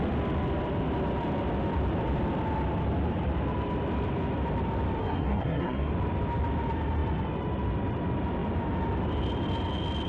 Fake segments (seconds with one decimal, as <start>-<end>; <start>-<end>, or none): 5.0-5.9